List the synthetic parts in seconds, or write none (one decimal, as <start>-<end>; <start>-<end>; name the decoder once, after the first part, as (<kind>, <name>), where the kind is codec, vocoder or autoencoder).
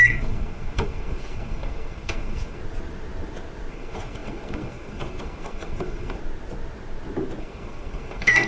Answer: 0.0-2.6 (codec, SNAC); 3.7-6.2; 7.4-8.5